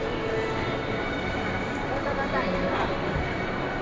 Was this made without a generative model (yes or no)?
yes